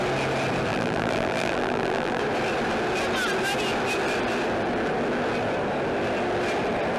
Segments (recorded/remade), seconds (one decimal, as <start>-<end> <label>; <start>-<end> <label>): 0.0-0.7 recorded; 0.7-2.2 remade; 2.2-7.0 recorded